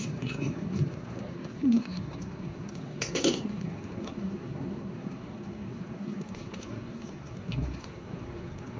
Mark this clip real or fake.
fake